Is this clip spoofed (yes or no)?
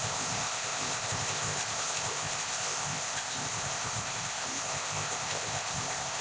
yes